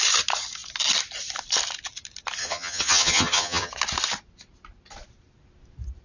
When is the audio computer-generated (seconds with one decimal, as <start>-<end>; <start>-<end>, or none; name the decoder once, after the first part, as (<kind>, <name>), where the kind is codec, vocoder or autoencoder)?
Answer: 2.4-3.7 (vocoder, HiFi-GAN)